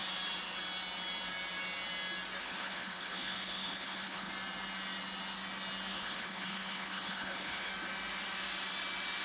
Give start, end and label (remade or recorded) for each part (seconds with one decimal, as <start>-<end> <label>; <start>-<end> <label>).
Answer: 0.0-2.4 recorded; 2.4-4.3 remade; 4.3-5.9 recorded; 5.9-7.7 remade; 7.7-9.2 recorded